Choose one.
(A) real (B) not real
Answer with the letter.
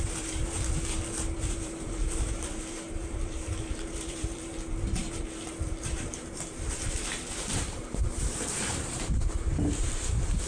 B